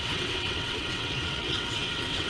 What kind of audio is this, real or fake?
fake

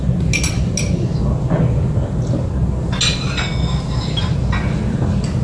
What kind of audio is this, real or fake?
real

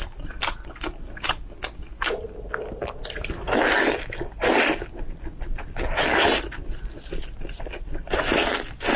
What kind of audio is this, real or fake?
real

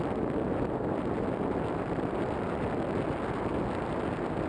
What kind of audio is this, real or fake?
real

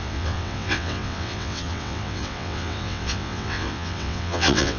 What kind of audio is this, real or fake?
fake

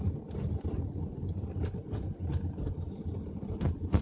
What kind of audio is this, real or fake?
real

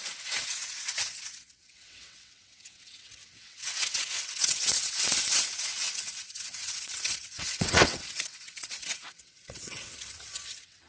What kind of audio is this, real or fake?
fake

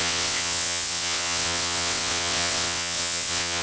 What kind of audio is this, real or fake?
fake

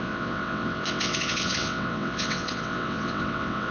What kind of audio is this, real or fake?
fake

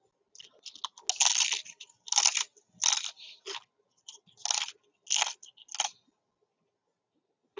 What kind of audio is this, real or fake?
real